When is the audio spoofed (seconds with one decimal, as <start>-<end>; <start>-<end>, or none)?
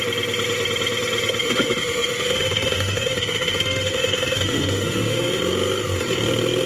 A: 1.4-5.4